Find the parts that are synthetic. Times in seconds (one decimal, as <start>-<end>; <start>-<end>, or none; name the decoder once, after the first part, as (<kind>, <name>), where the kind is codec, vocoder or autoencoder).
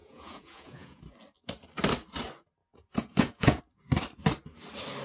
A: 0.0-1.0 (vocoder, Vocos); 2.6-3.6